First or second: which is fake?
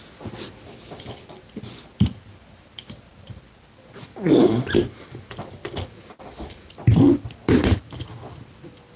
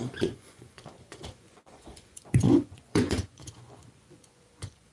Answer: second